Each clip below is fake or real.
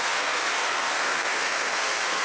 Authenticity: fake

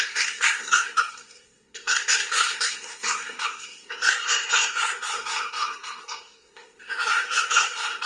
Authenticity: fake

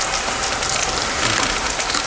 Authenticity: real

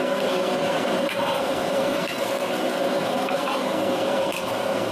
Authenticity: fake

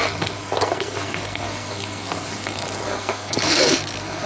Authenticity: fake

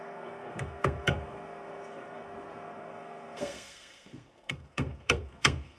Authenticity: fake